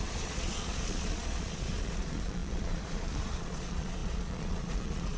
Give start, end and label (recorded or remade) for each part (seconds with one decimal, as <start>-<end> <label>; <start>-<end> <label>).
0.0-5.2 remade